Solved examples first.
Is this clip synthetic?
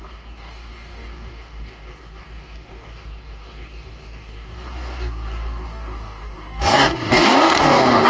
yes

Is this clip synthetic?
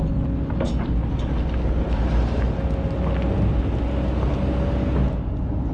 no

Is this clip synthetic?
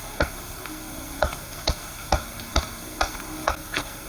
yes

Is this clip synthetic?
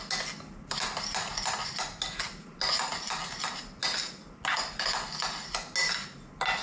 no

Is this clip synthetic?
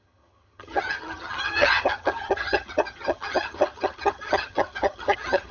yes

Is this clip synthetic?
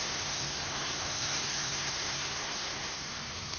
yes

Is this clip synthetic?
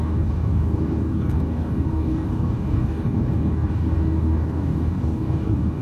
yes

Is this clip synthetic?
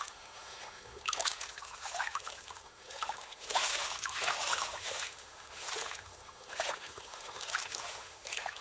yes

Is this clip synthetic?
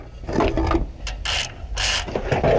no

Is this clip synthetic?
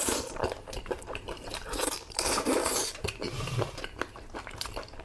yes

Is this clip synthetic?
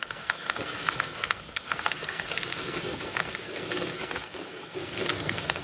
yes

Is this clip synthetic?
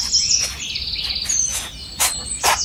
no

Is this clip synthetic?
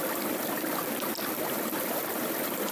yes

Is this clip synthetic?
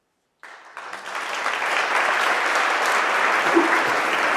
no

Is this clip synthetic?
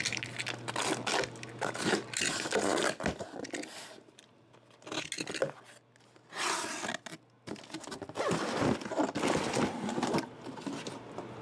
no